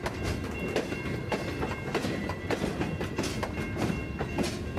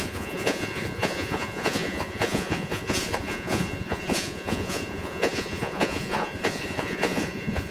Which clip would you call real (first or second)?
first